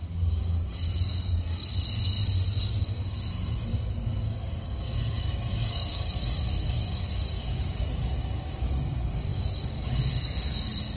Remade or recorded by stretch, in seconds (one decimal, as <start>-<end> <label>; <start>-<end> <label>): 0.0-2.2 remade; 2.2-2.7 recorded; 2.7-11.0 remade

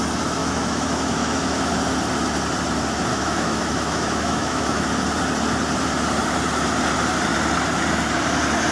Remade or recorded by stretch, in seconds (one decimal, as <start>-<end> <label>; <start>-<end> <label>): 0.0-0.4 recorded; 0.4-1.7 remade; 1.7-3.1 recorded; 3.1-4.9 remade; 4.9-8.7 recorded

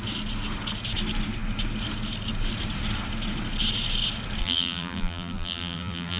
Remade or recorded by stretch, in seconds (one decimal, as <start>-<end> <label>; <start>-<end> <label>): 0.0-4.4 recorded; 4.4-6.2 remade

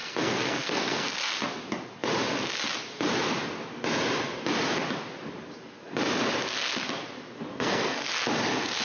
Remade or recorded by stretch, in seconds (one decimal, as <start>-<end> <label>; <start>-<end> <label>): 0.0-1.3 remade; 1.3-7.5 recorded; 7.5-8.1 remade; 8.1-8.8 recorded

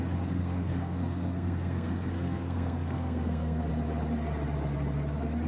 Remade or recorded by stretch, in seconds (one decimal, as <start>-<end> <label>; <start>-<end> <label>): 0.0-0.4 recorded; 0.4-3.7 remade; 3.7-5.5 recorded

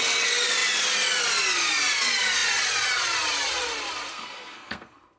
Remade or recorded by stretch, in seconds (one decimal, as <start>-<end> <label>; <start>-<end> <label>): 0.0-4.1 recorded; 4.1-5.2 remade

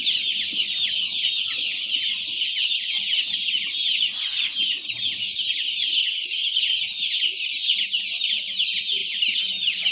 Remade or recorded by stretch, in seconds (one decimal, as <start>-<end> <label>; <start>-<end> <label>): 0.0-6.0 recorded; 6.0-6.6 remade; 6.6-9.9 recorded